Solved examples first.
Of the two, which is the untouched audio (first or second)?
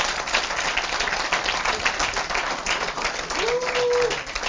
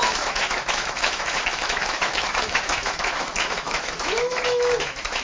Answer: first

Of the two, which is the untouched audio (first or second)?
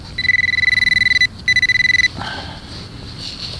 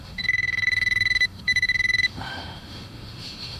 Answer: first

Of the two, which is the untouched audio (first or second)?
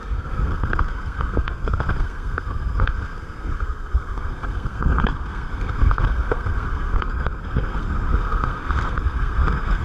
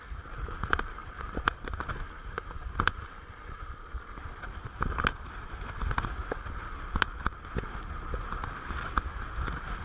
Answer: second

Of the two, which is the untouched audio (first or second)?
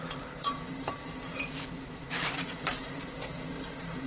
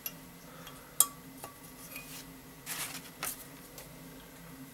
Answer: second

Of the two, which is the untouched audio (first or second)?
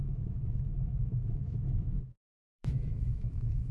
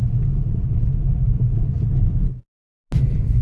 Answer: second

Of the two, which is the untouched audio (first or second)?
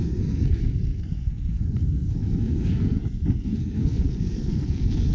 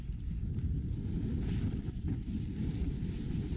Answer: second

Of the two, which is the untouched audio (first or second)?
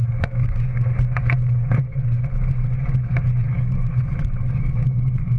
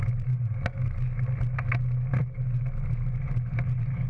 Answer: second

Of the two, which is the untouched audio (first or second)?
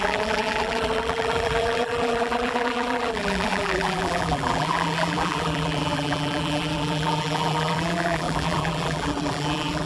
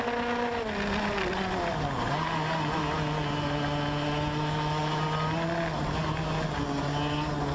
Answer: second